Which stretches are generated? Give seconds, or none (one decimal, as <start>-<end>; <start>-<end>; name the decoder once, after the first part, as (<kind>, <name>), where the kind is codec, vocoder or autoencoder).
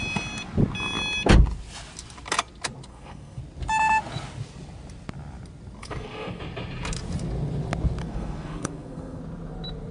2.9-3.4 (codec, SNAC); 5.8-6.4; 8.0-9.2